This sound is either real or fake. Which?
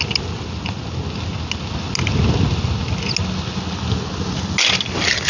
real